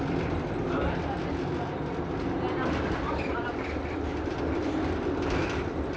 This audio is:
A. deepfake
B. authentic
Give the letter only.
A